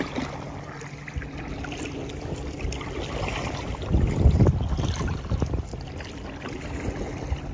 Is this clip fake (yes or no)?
no